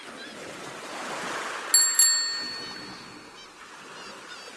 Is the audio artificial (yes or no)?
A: no